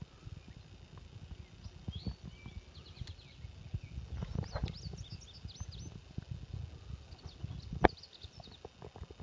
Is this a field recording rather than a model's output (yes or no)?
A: yes